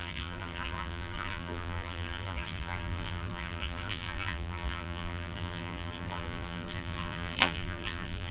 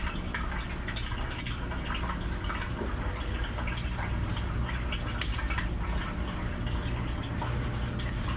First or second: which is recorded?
second